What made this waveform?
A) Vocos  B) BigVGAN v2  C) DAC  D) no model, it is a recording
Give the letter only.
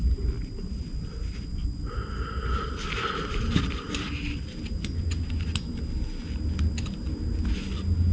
D